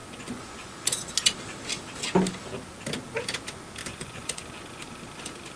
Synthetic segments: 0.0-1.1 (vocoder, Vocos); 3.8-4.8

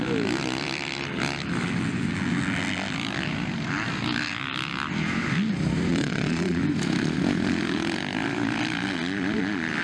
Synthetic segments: 5.9-6.6 (vocoder, Vocos)

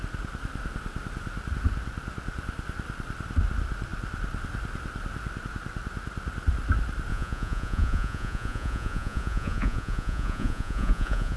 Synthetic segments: 7.1-11.4 (vocoder, Vocos)

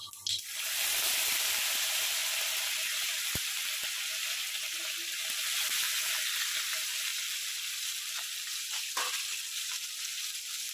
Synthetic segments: 0.0-1.8 (vocoder, BigVGAN v2); 7.1-9.8

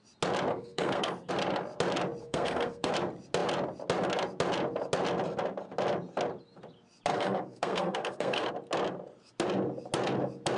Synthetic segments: 0.5-1.3 (codec, SNAC); 2.2-2.9; 7.1-8.5

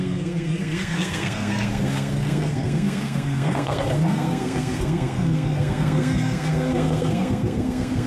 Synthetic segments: 0.0-8.1 (codec, SNAC)